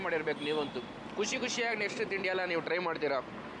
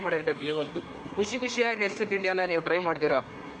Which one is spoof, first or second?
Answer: second